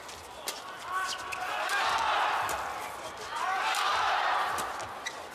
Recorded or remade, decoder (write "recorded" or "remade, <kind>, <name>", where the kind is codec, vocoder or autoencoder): recorded